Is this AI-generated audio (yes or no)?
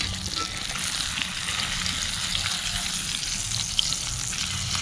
no